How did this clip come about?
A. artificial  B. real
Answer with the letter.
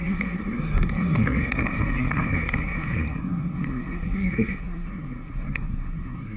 A